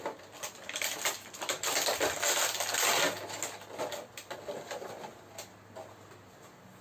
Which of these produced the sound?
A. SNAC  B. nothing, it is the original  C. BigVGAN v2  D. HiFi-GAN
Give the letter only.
B